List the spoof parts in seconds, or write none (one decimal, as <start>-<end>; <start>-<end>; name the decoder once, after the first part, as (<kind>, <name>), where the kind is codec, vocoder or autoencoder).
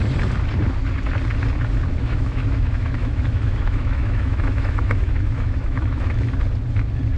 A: 2.0-6.3 (autoencoder, DAC-VAE)